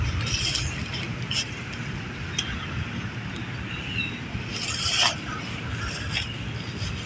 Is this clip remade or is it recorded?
recorded